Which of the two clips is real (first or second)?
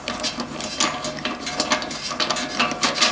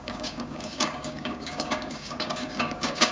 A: first